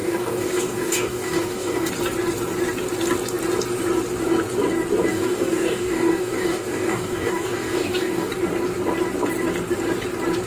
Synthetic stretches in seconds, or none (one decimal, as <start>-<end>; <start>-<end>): 0.0-1.9; 5.1-8.3